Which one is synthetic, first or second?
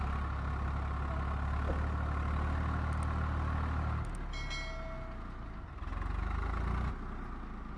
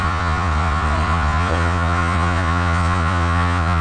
second